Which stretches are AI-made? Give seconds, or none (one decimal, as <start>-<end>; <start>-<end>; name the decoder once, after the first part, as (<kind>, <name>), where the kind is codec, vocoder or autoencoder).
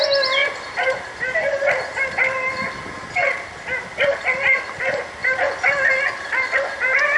none